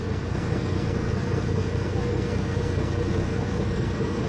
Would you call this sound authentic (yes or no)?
no